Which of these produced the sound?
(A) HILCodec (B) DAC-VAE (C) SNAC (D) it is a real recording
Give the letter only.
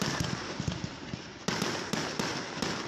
D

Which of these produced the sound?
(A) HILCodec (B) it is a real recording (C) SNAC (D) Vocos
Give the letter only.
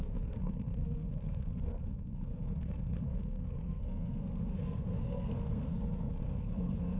C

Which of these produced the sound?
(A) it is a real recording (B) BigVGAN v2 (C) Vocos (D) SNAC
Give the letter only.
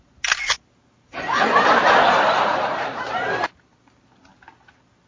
A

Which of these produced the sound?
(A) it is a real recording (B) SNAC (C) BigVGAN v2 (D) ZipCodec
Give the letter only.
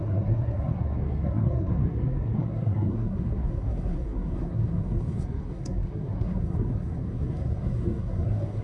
B